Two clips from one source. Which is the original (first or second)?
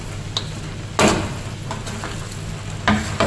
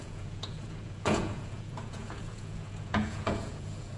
first